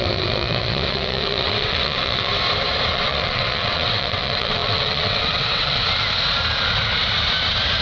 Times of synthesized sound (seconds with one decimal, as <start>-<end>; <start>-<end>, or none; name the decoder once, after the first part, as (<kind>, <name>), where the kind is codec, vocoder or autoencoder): 0.0-2.3 (vocoder, WaveNeXt); 2.9-5.8